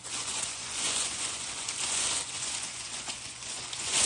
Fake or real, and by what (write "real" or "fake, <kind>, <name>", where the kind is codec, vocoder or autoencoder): fake, vocoder, Vocos